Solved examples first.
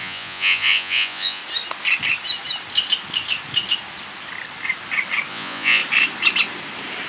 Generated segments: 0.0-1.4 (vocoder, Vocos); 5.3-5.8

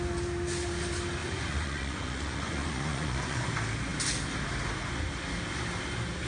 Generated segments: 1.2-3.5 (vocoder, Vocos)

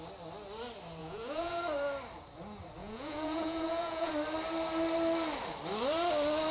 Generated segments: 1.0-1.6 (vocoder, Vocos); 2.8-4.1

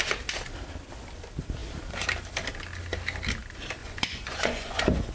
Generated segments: 3.8-5.1 (vocoder, Vocos)